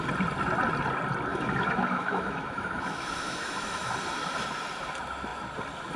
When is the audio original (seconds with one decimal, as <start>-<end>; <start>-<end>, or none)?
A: 0.0-1.3; 3.9-6.0